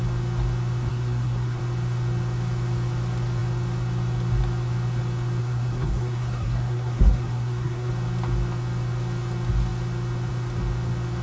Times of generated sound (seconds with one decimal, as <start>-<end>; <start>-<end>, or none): 0.9-1.6; 5.4-7.9